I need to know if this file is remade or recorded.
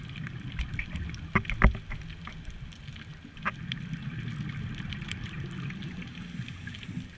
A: recorded